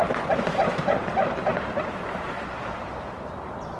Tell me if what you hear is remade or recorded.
remade